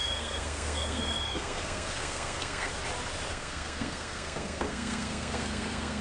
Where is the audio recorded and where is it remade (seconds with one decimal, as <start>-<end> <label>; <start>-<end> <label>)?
0.0-2.7 remade; 2.7-3.3 recorded; 3.3-6.0 remade